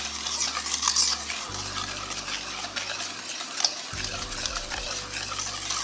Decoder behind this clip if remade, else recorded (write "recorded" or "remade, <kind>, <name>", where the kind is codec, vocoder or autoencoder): recorded